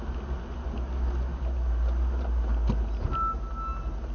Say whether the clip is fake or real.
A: real